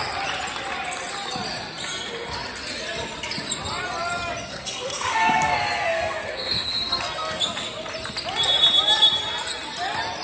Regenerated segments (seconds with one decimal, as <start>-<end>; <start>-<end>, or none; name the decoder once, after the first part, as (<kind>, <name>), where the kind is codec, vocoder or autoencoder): 4.5-7.4 (codec, SNAC)